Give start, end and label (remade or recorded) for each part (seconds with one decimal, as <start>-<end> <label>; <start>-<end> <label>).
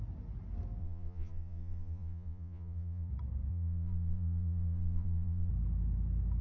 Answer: 0.0-0.8 recorded; 0.8-3.1 remade; 3.1-3.5 recorded; 3.5-5.5 remade; 5.5-6.4 recorded